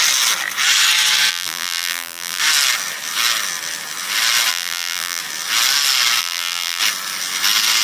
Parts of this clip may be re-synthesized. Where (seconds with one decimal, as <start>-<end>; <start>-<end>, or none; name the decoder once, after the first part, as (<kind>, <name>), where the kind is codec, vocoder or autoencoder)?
1.3-2.4 (vocoder, BigVGAN v2); 4.5-5.2; 6.2-6.8